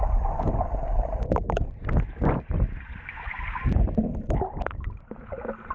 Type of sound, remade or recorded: recorded